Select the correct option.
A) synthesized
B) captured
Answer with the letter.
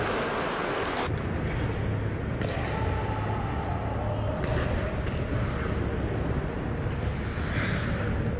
B